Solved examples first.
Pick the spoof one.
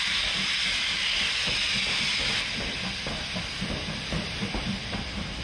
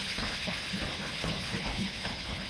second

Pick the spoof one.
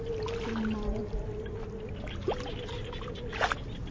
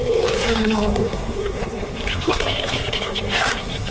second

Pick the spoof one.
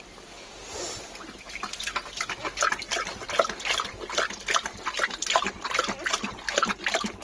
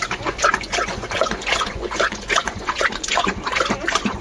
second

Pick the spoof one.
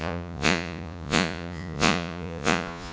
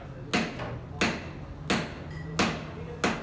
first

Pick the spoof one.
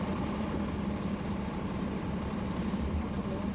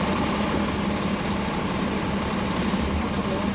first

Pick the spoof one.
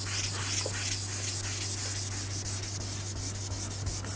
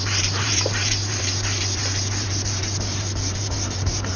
second